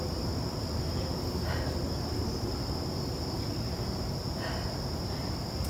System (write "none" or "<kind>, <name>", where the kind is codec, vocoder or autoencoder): none